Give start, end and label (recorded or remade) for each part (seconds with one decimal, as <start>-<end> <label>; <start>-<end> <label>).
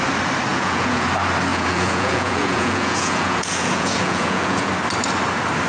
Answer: 0.0-0.5 recorded; 0.5-1.1 remade; 1.1-1.5 recorded; 1.5-4.7 remade; 4.7-5.7 recorded